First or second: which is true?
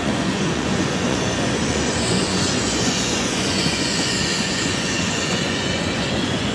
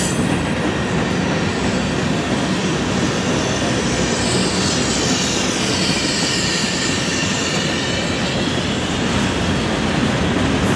second